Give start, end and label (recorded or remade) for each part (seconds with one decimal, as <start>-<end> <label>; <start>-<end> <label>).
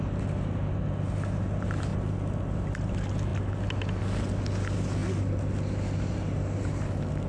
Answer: 0.0-7.3 recorded